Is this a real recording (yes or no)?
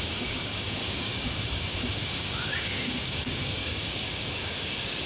no